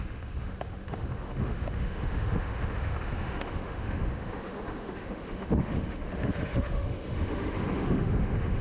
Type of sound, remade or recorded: remade